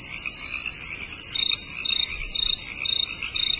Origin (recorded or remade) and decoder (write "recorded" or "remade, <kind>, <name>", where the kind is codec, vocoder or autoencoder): recorded